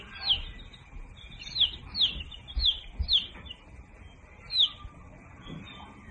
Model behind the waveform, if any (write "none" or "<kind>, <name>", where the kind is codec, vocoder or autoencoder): none